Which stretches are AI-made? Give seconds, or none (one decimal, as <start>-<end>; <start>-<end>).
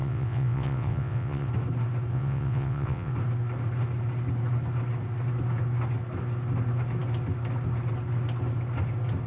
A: 0.0-1.5; 2.1-3.1